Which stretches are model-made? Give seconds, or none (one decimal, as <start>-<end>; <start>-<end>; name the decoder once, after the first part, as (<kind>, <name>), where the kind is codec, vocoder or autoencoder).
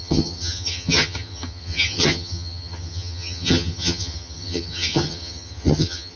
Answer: 0.0-6.2 (vocoder, HiFi-GAN)